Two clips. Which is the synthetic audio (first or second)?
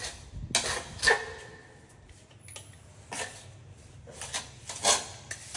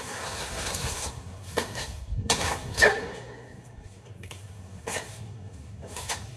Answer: second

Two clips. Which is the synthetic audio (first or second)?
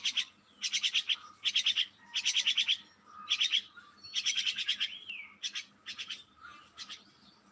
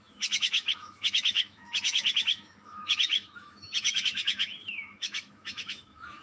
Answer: second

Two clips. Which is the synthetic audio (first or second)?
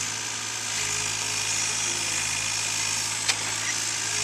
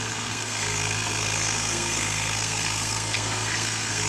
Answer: second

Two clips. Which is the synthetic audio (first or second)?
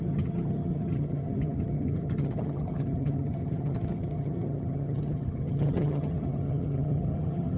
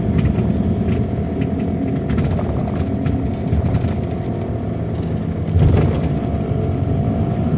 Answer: first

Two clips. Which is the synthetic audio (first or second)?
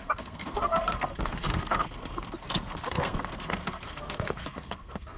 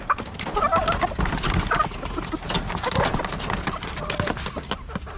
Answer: first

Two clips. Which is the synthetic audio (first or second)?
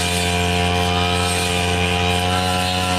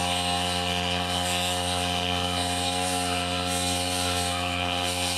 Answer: second